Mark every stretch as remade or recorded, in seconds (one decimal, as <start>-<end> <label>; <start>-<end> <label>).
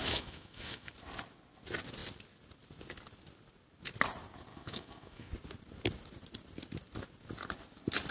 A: 0.0-0.9 remade; 0.9-4.5 recorded; 4.5-5.3 remade; 5.3-8.1 recorded